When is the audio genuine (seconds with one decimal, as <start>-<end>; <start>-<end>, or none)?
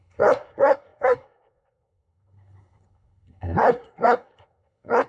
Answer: none